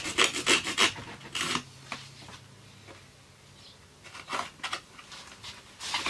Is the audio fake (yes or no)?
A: no